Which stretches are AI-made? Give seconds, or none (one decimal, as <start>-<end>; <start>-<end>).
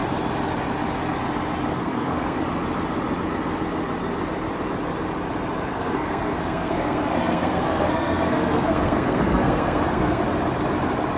1.7-2.4; 5.7-10.2